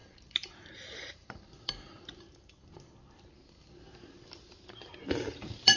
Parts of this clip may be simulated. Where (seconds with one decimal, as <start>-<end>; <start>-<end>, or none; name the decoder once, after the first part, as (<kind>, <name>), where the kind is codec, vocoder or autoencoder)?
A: 0.0-1.5 (vocoder, BigVGAN v2)